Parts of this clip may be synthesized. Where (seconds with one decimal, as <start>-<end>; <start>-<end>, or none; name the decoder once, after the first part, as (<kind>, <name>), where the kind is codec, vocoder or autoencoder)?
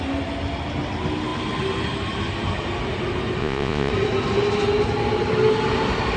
3.4-3.9 (vocoder, Vocos)